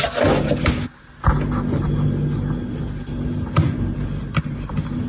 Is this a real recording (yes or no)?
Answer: yes